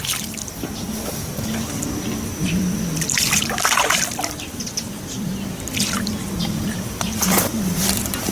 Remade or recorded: remade